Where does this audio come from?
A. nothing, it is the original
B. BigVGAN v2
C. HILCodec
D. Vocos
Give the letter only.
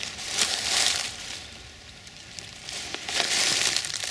B